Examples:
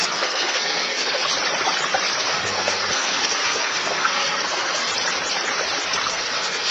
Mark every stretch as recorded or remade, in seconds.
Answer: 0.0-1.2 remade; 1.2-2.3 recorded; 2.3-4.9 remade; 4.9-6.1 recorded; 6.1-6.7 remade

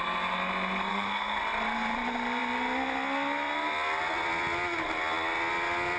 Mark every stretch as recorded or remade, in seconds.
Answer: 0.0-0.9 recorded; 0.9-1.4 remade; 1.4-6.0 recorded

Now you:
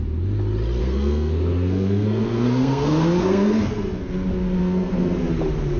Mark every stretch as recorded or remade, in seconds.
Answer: 0.0-0.8 recorded; 0.8-4.1 remade; 4.1-4.6 recorded; 4.6-5.3 remade; 5.3-5.8 recorded